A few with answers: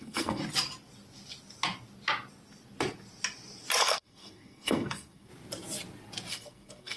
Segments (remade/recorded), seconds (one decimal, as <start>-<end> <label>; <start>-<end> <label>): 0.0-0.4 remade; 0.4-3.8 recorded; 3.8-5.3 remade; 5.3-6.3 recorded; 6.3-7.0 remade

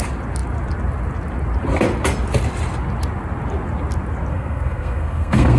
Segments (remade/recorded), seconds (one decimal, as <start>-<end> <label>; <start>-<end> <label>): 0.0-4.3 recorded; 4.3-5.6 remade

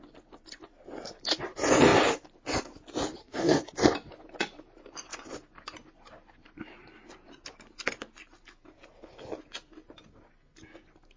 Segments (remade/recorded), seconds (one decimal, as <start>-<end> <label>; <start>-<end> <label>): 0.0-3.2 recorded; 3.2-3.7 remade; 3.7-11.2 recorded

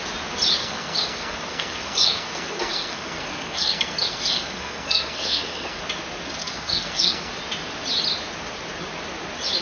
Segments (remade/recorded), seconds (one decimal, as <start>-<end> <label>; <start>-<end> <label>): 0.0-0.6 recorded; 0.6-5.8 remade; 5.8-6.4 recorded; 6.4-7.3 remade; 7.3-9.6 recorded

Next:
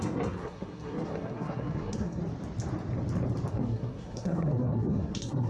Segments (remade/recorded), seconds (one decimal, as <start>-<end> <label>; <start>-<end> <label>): 0.0-2.2 remade; 2.2-3.5 recorded; 3.5-5.5 remade

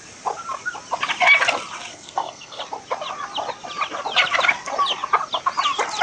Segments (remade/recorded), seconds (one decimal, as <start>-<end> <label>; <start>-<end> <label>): 0.0-1.9 recorded; 1.9-2.6 remade; 2.6-6.0 recorded

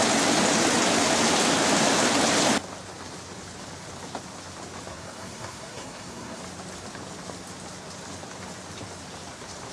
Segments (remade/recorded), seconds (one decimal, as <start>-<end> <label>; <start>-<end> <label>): 0.0-4.9 recorded; 4.9-6.4 remade; 6.4-9.7 recorded

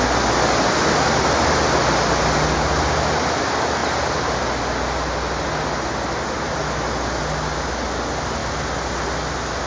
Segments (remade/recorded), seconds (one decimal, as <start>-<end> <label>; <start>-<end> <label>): 0.0-9.7 recorded